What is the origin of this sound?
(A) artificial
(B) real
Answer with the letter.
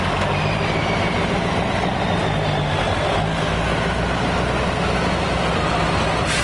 B